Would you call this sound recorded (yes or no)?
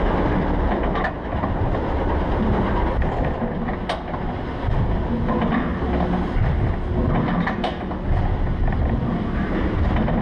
yes